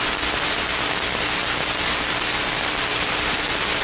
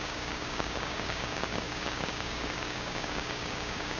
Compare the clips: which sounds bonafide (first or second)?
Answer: first